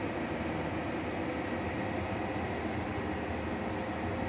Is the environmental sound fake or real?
real